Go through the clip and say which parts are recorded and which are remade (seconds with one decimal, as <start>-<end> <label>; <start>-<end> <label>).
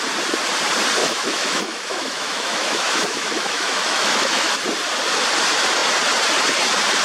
0.0-1.0 recorded; 1.0-4.6 remade; 4.6-7.0 recorded